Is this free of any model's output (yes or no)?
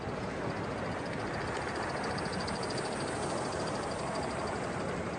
yes